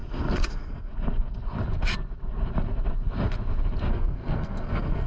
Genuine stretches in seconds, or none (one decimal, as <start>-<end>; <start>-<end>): 0.0-0.5; 0.9-3.9